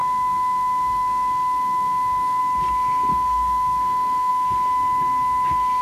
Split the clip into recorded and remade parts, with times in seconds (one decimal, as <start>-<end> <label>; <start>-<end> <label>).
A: 0.0-2.4 remade; 2.4-3.1 recorded; 3.1-4.3 remade; 4.3-5.8 recorded

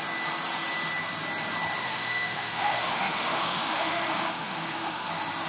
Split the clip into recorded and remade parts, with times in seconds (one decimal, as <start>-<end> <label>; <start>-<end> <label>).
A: 0.0-1.8 recorded; 1.8-5.1 remade; 5.1-5.5 recorded

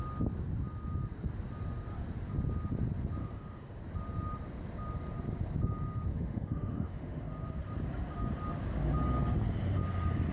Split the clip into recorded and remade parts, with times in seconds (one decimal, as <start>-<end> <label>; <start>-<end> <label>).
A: 0.0-3.2 recorded; 3.2-3.8 remade; 3.8-6.1 recorded; 6.1-7.2 remade; 7.2-10.3 recorded

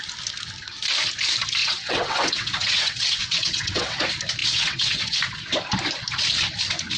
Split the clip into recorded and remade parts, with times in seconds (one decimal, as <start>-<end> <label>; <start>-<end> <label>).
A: 0.0-1.6 recorded; 1.6-4.0 remade; 4.0-4.4 recorded; 4.4-5.2 remade; 5.2-7.0 recorded